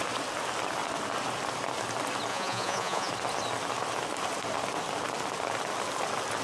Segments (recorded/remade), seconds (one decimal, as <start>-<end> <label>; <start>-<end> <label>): 0.0-2.3 recorded; 2.3-3.1 remade; 3.1-6.4 recorded